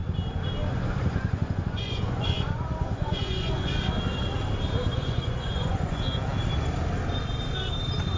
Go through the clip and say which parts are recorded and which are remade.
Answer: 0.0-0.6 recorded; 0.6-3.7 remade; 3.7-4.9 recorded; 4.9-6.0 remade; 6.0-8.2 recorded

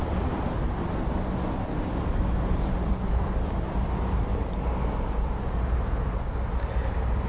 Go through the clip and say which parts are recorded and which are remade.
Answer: 0.0-1.0 remade; 1.0-2.1 recorded; 2.1-7.3 remade

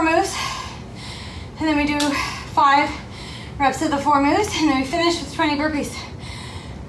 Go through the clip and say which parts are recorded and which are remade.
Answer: 0.0-0.9 recorded; 0.9-1.5 remade; 1.5-2.6 recorded; 2.6-3.6 remade; 3.6-5.0 recorded; 5.0-5.8 remade; 5.8-6.9 recorded

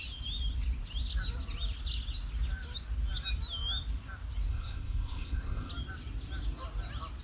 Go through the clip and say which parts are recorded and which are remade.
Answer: 0.0-4.5 recorded; 4.5-5.7 remade; 5.7-7.2 recorded

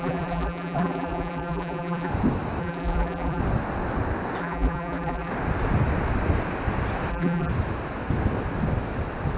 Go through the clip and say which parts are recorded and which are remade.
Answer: 0.0-2.1 remade; 2.1-2.6 recorded; 2.6-3.4 remade; 3.4-4.4 recorded; 4.4-5.3 remade; 5.3-7.1 recorded; 7.1-7.5 remade; 7.5-9.4 recorded

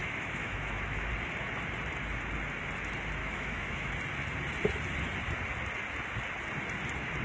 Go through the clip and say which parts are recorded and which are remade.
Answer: 0.0-1.1 remade; 1.1-3.2 recorded; 3.2-3.9 remade; 3.9-7.2 recorded